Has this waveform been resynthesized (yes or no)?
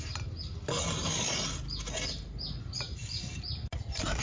no